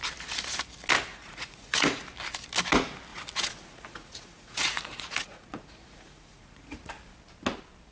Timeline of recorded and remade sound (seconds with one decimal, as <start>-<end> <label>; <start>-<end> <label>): 0.0-1.1 recorded; 1.1-2.0 remade; 2.0-3.1 recorded; 3.1-6.9 remade; 6.9-7.9 recorded

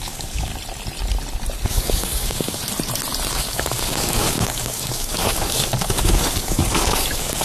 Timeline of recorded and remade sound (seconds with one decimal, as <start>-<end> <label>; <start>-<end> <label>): 0.0-0.5 remade; 0.5-1.7 recorded; 1.7-2.6 remade; 2.6-3.3 recorded; 3.3-7.4 remade

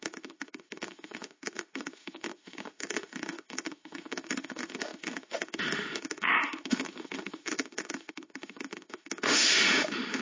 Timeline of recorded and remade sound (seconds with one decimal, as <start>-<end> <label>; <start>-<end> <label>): 0.0-10.2 remade